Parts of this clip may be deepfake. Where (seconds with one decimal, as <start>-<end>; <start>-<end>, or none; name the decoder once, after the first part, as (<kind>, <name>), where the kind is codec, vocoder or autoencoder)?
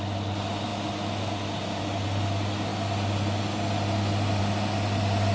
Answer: none